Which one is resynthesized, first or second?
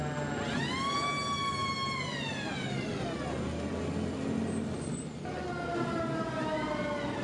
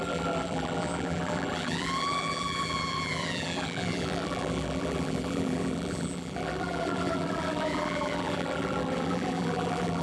second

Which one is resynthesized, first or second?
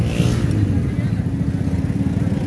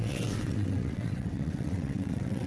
second